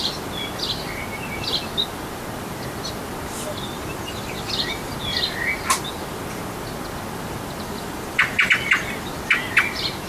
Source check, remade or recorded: recorded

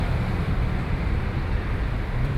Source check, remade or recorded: remade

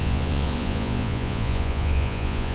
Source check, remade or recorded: remade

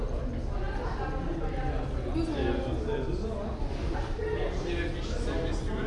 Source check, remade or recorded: recorded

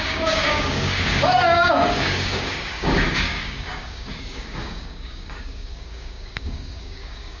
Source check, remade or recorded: remade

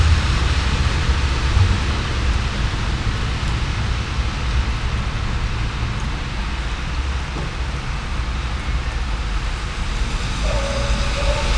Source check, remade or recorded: recorded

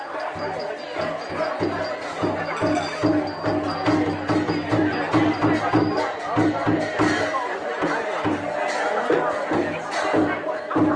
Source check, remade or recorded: recorded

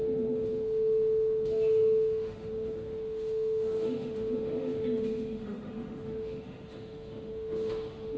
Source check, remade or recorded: remade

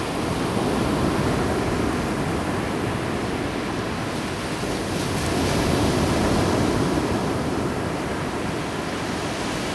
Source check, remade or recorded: recorded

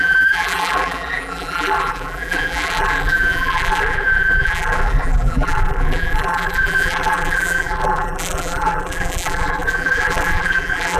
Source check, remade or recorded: remade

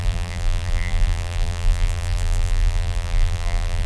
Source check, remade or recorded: remade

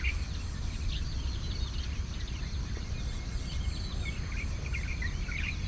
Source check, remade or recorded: recorded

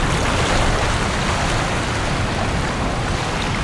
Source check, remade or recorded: recorded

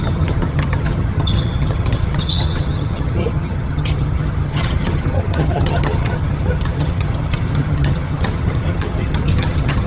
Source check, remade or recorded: remade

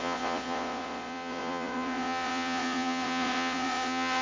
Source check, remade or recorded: remade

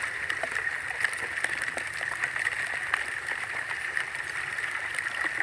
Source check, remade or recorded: recorded